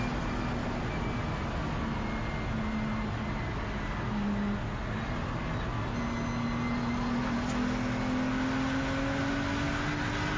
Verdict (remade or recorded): recorded